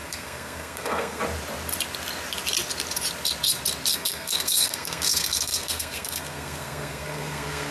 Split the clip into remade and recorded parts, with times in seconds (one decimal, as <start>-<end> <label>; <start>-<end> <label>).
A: 0.0-1.2 remade; 1.2-3.9 recorded; 3.9-7.7 remade